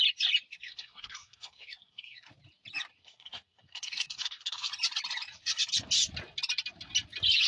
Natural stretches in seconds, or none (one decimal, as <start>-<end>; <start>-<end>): 0.0-0.5; 2.3-3.0; 4.7-7.5

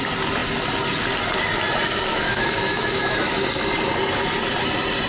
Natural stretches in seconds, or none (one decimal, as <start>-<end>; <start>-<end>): 0.0-2.1; 3.3-5.1

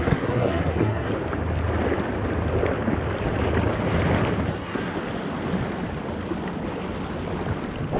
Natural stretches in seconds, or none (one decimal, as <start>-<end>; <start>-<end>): 1.1-4.5; 4.9-8.0

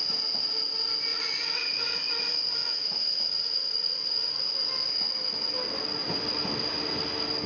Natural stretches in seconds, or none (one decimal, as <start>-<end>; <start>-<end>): 0.0-1.1; 2.0-2.6; 4.4-7.5

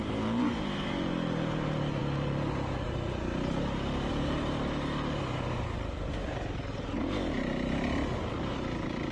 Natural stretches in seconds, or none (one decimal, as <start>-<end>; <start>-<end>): 0.0-9.1

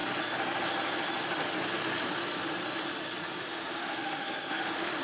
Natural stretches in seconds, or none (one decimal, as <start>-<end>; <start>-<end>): 0.0-3.4

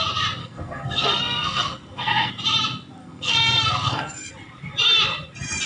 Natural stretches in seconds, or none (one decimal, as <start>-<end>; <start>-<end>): 0.0-0.4; 2.3-3.0; 4.3-5.7

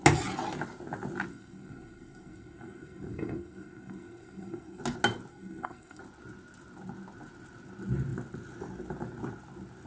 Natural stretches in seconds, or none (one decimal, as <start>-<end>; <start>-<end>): 0.0-1.3; 4.8-5.3; 6.0-9.9